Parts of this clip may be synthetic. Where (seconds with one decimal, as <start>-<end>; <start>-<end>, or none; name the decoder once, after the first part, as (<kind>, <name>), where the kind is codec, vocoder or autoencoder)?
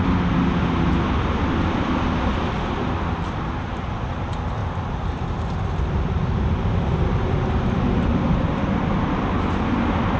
none